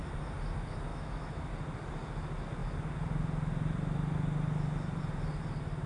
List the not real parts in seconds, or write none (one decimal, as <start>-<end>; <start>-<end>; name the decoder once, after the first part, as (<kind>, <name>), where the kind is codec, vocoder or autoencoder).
0.9-1.5 (autoencoder, DAC-VAE)